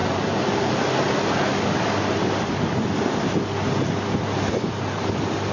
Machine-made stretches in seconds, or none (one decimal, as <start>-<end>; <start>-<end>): none